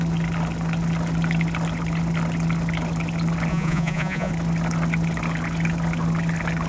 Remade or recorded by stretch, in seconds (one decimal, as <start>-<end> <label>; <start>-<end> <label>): 0.0-3.5 recorded; 3.5-4.3 remade; 4.3-6.7 recorded